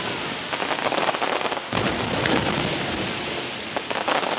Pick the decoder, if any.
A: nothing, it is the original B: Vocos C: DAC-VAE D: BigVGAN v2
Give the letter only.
A